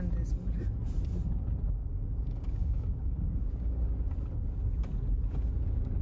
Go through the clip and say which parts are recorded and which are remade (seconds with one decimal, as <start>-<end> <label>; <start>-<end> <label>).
0.0-1.8 recorded; 1.8-3.8 remade; 3.8-6.0 recorded